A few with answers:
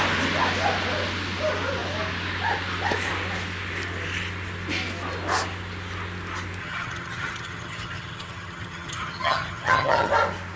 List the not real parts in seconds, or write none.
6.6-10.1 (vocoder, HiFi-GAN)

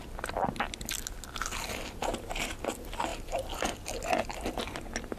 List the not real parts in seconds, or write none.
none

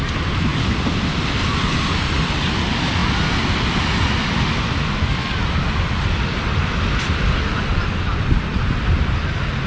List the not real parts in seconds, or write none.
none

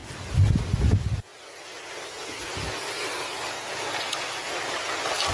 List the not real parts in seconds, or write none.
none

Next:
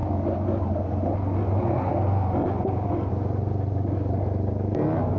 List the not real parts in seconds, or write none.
none

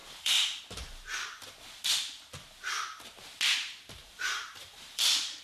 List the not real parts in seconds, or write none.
0.0-0.6 (vocoder, BigVGAN v2); 4.0-5.4

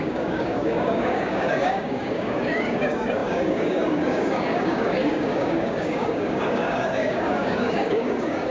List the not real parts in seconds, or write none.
0.0-8.5 (codec, DAC)